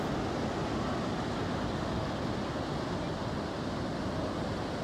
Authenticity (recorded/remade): recorded